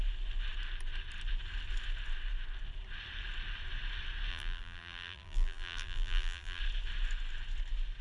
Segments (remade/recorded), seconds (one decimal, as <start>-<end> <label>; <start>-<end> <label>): 0.0-4.3 recorded; 4.3-6.6 remade; 6.6-8.0 recorded